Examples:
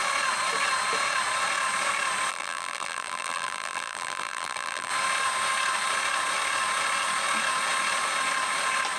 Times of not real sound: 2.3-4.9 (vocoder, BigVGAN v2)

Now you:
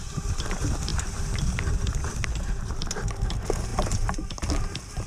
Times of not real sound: 0.0-0.9 (vocoder, BigVGAN v2); 2.4-5.1

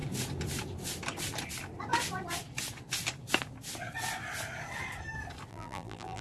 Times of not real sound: 5.5-6.2 (vocoder, BigVGAN v2)

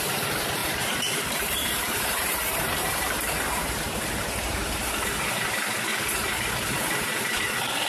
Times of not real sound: 0.6-4.9 (vocoder, BigVGAN v2); 5.9-6.5

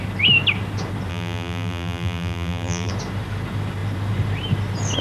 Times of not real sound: 1.1-2.9 (vocoder, BigVGAN v2)